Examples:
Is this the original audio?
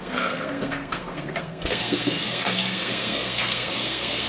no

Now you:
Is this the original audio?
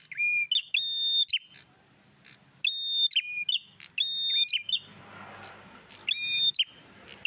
yes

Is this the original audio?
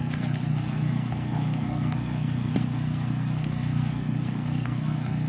no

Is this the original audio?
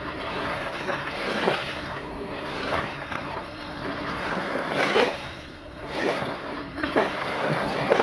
no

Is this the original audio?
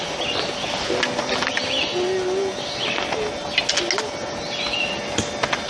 yes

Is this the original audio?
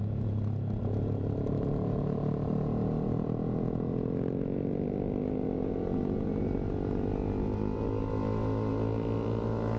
yes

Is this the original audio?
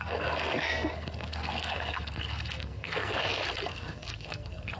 no